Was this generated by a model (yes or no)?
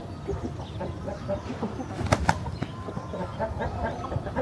no